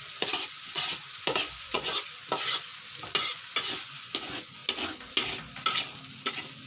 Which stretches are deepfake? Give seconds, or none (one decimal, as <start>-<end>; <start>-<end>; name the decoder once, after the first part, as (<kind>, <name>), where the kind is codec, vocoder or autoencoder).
0.0-2.7 (vocoder, Vocos); 3.2-4.6